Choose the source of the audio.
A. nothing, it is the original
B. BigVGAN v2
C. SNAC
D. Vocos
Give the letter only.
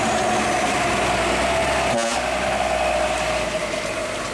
A